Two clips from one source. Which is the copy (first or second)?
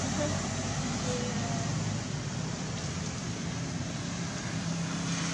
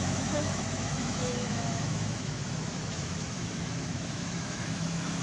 second